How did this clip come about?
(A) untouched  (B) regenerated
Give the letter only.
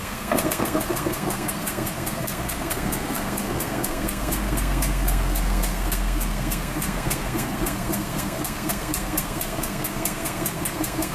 B